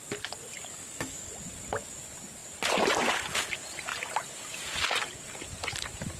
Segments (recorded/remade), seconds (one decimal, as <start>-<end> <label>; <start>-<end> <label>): 0.0-0.7 recorded; 0.7-1.3 remade; 1.3-6.2 recorded